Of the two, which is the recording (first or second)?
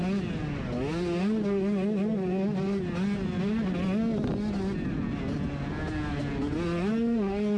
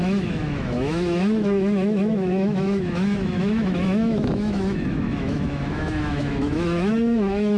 first